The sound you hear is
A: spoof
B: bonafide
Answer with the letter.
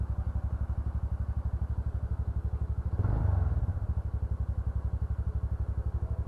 B